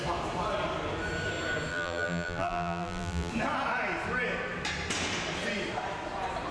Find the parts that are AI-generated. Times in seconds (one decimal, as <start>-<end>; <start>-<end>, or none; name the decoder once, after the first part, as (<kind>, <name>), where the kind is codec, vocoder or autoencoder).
1.7-3.3 (vocoder, BigVGAN v2)